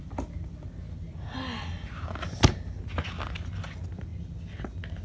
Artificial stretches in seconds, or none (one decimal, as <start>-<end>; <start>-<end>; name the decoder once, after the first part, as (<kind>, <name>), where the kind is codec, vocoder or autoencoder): none